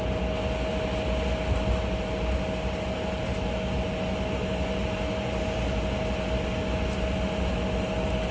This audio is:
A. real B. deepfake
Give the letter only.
A